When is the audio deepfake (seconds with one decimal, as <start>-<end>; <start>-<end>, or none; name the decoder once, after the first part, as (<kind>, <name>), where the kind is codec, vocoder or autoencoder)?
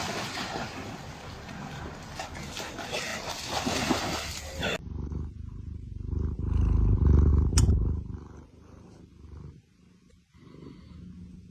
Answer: none